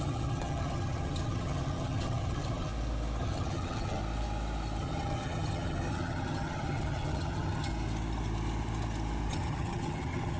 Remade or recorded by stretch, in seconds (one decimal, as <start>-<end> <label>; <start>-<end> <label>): 0.0-2.7 remade; 2.7-3.2 recorded; 3.2-4.0 remade; 4.0-4.8 recorded; 4.8-7.7 remade; 7.7-9.3 recorded; 9.3-10.4 remade